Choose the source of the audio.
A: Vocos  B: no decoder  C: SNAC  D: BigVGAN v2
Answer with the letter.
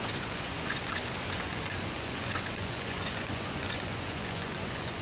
A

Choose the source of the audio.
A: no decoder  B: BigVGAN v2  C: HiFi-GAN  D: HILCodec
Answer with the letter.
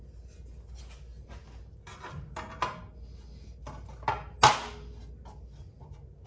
A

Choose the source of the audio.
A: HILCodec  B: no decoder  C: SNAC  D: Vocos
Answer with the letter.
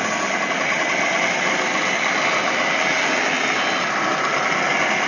B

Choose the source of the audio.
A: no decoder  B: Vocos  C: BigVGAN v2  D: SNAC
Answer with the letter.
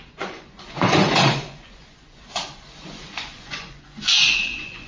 B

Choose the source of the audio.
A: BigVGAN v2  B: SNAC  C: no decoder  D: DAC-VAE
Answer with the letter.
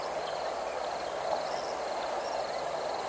C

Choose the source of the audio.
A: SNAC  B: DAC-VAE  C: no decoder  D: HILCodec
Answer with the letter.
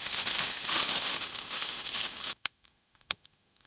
B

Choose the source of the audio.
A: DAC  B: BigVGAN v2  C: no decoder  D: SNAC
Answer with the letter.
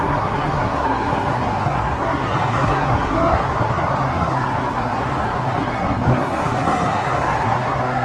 D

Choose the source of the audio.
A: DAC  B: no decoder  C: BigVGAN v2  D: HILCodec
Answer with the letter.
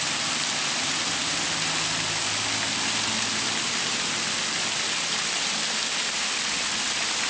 B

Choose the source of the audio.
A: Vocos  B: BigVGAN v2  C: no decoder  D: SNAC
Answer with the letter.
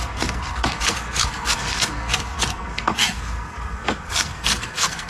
D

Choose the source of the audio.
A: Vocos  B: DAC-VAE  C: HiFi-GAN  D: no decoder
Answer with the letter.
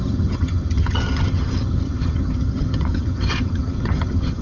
C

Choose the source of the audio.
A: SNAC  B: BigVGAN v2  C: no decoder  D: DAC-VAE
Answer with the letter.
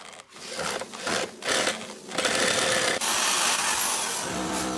C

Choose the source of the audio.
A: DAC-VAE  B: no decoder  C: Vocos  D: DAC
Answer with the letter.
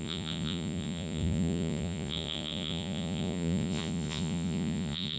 C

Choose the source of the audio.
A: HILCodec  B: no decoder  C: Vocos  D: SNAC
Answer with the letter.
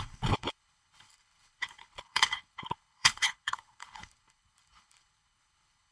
A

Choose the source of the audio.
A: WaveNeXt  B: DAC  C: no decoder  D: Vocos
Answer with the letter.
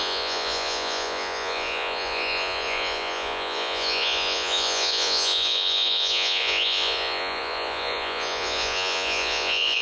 D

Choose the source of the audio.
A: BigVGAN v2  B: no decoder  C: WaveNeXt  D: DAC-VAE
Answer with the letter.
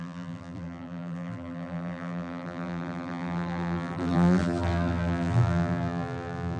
A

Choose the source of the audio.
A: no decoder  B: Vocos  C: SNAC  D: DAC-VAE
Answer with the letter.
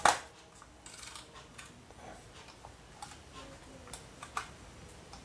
A